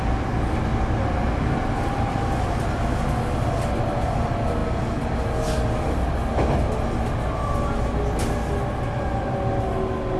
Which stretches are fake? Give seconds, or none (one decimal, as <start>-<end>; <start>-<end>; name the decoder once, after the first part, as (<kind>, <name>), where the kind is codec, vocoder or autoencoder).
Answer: none